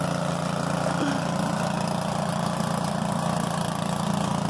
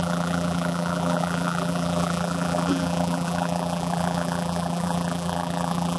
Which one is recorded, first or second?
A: first